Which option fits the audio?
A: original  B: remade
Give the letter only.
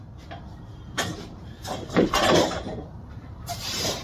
B